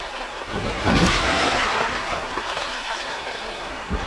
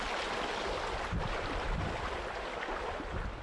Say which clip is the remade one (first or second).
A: first